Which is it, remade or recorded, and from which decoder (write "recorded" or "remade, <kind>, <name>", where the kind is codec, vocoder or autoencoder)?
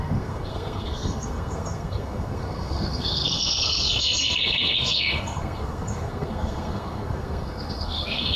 remade, codec, SNAC